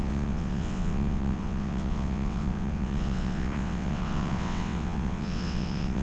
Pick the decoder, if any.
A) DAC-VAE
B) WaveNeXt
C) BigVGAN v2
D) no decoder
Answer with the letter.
B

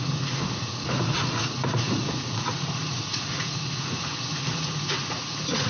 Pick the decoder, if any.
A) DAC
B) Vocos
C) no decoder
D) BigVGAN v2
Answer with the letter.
B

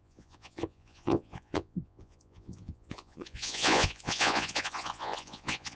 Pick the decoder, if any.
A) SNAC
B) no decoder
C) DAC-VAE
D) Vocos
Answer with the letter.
D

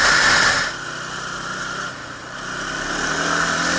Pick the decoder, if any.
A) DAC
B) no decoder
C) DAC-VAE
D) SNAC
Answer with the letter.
B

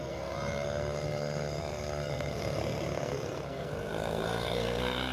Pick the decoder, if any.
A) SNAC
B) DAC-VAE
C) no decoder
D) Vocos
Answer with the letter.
A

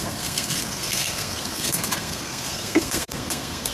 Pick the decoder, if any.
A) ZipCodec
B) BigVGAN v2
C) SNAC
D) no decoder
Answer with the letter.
C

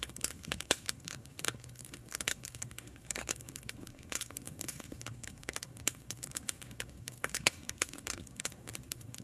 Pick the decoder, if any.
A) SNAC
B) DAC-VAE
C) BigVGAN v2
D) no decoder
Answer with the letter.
A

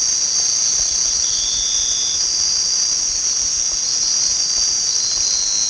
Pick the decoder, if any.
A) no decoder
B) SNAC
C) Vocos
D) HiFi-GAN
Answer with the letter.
A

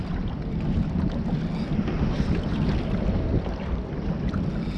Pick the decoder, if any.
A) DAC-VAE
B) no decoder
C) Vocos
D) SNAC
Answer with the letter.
B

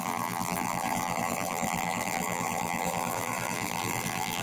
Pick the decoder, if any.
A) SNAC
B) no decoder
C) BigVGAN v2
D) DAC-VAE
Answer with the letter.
C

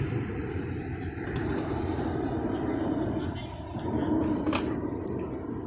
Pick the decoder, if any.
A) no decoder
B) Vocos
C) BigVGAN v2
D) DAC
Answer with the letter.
C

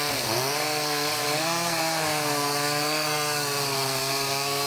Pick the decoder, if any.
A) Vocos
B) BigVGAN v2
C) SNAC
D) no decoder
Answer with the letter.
C